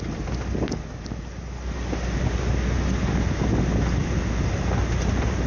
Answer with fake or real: real